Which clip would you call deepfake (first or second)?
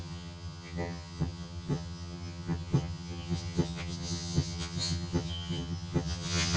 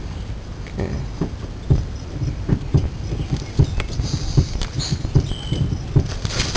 first